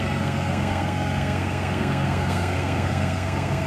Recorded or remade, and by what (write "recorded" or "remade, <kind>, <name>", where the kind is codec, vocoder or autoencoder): remade, codec, SNAC